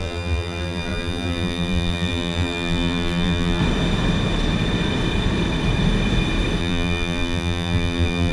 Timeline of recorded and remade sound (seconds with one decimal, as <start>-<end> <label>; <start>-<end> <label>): 0.0-3.6 remade; 3.6-6.6 recorded; 6.6-8.3 remade